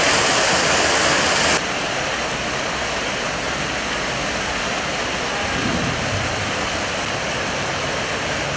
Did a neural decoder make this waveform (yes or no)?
no